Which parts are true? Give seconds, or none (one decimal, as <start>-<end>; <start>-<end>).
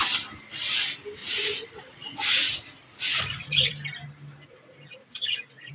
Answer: 0.0-1.2; 3.7-4.5